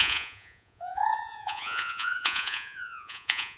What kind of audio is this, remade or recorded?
remade